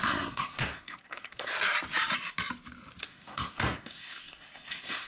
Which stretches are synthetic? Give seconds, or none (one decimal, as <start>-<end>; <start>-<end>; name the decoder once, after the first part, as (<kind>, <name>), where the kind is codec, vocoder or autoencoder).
0.0-1.5 (codec, SNAC); 3.0-5.1